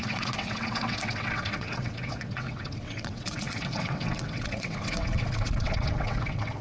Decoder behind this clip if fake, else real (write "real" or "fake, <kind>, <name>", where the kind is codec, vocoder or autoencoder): fake, vocoder, WaveNeXt